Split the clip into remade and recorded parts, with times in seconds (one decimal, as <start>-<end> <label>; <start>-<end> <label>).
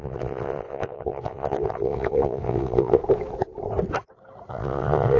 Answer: 0.0-3.0 remade; 3.0-4.5 recorded; 4.5-5.2 remade